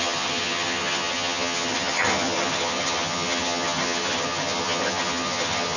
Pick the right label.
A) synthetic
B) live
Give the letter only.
A